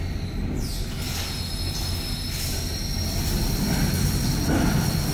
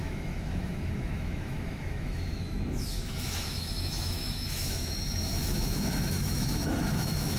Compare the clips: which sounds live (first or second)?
first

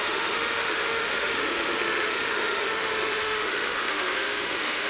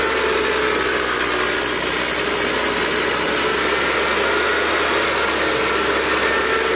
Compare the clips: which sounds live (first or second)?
second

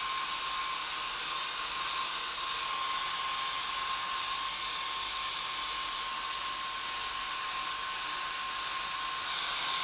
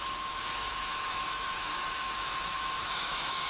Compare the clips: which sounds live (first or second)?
first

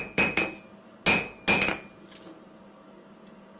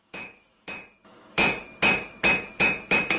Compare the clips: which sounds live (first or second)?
first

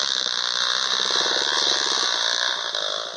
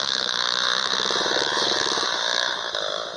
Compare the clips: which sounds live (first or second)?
first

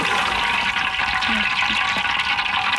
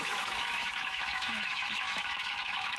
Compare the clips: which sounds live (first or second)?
first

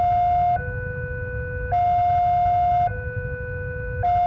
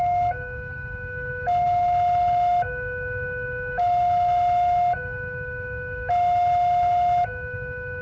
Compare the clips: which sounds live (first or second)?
first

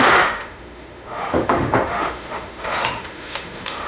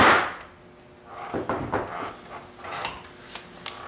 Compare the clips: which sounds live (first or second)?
second